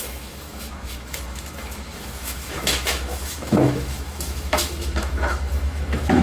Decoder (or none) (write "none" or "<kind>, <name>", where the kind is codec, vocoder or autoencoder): autoencoder, DAC-VAE